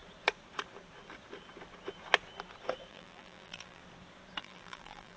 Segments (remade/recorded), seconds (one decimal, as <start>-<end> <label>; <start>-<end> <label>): 0.0-2.9 recorded; 2.9-3.8 remade; 3.8-4.4 recorded; 4.4-5.2 remade